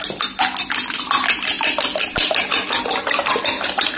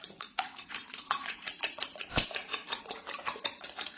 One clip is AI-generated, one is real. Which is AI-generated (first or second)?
second